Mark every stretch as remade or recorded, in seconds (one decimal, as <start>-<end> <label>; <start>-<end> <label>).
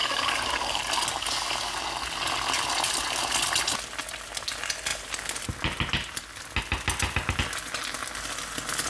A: 0.0-0.8 remade; 0.8-8.9 recorded